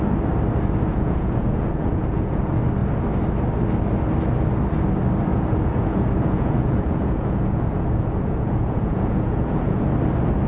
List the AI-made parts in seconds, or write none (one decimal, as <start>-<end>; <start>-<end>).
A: 0.9-2.4; 5.3-9.8